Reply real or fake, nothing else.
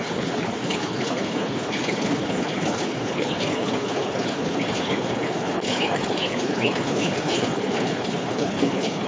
fake